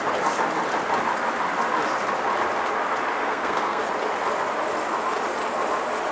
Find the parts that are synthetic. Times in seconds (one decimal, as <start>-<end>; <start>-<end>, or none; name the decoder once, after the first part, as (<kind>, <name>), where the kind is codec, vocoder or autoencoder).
3.2-3.8 (codec, SNAC)

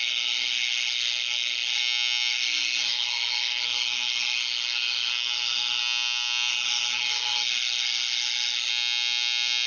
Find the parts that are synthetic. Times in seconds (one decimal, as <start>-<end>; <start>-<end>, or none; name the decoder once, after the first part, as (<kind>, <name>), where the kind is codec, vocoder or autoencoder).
0.0-1.8 (codec, SNAC); 2.3-5.8; 6.5-8.7

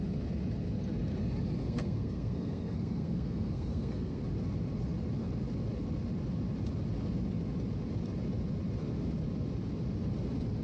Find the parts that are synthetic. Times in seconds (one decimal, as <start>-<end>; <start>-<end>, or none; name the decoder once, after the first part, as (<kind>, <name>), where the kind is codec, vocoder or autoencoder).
1.6-4.2 (codec, SNAC)

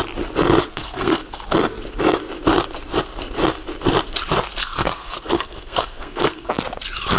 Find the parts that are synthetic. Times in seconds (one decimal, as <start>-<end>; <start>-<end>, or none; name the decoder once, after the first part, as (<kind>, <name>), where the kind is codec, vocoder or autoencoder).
0.7-1.4 (codec, SNAC); 4.6-6.5